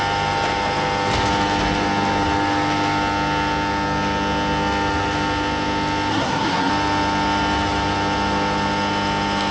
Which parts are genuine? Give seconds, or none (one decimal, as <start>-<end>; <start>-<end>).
0.0-6.1; 6.7-9.5